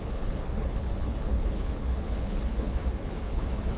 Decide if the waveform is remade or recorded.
remade